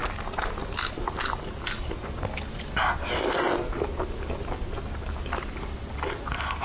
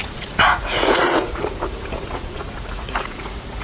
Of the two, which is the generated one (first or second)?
second